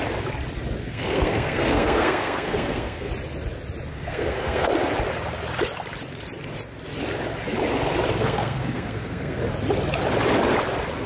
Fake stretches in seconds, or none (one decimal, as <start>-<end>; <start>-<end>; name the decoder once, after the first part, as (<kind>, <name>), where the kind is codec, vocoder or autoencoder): 0.8-3.1 (codec, SNAC); 3.9-4.7; 8.1-9.4